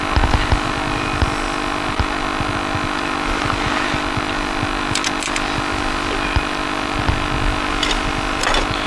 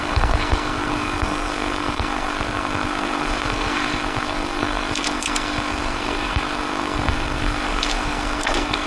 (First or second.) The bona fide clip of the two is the first